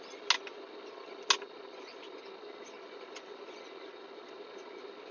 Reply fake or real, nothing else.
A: real